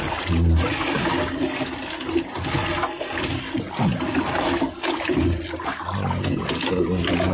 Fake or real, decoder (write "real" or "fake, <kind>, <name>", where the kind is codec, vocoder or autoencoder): real